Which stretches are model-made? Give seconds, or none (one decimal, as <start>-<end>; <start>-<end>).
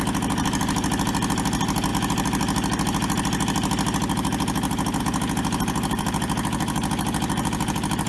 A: none